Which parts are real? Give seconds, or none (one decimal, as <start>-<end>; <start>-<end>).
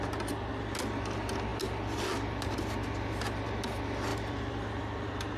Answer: 0.0-4.1